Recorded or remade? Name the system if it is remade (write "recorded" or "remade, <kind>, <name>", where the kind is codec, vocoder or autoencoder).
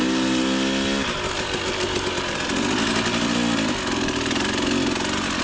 recorded